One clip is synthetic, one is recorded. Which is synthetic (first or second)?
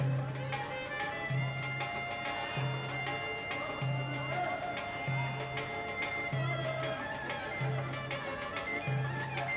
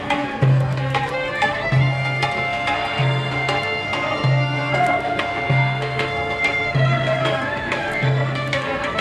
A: second